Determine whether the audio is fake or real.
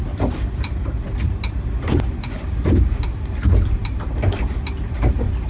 real